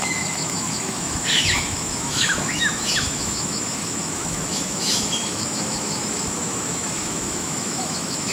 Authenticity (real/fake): fake